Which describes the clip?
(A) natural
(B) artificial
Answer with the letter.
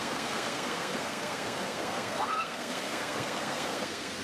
B